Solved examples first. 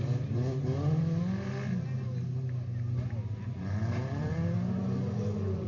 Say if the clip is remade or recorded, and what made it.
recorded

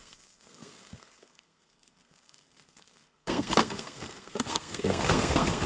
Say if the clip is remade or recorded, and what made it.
remade, codec, SNAC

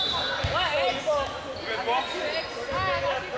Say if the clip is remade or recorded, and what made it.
recorded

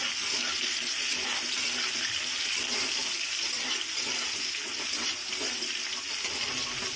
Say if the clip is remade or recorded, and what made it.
recorded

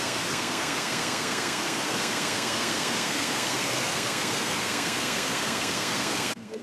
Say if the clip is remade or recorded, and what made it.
remade, codec, SNAC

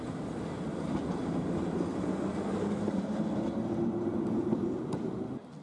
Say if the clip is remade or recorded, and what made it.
recorded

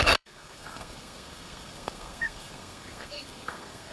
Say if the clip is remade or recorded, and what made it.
remade, codec, SNAC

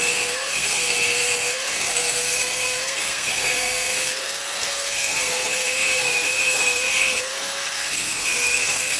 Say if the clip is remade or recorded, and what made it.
remade, codec, SNAC